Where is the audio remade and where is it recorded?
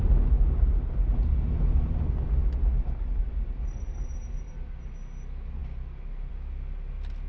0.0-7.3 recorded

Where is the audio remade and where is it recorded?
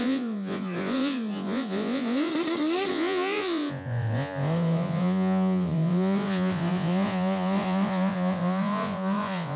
0.0-2.3 remade; 2.3-2.9 recorded; 2.9-9.6 remade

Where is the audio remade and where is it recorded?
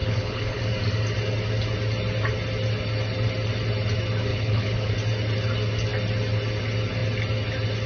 0.0-0.6 remade; 0.6-4.3 recorded; 4.3-4.9 remade; 4.9-7.9 recorded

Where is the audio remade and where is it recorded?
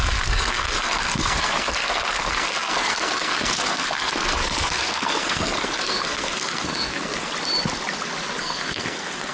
0.0-7.3 remade; 7.3-8.4 recorded; 8.4-9.3 remade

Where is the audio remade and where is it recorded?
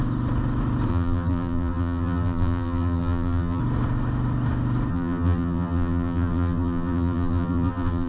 0.0-0.9 recorded; 0.9-3.6 remade; 3.6-4.9 recorded; 4.9-8.1 remade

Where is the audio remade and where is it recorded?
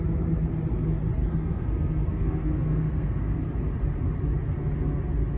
0.0-1.2 recorded; 1.2-3.4 remade; 3.4-5.4 recorded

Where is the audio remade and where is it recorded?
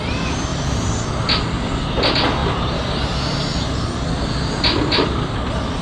0.0-5.8 recorded